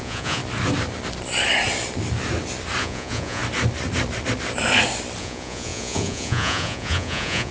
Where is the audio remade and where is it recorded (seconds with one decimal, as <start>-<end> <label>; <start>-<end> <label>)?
0.0-0.4 remade; 0.4-2.8 recorded; 2.8-3.4 remade; 3.4-5.2 recorded; 5.2-7.5 remade